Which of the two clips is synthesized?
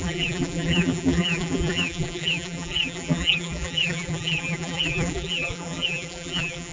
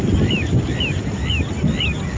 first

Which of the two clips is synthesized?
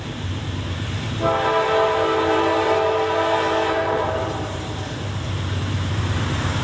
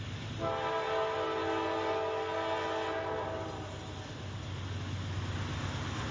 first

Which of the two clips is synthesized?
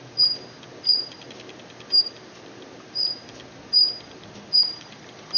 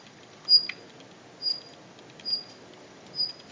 first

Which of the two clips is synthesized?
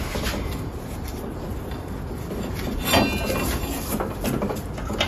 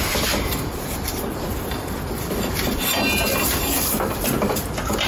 second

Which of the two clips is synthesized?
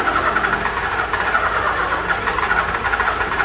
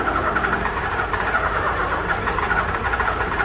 second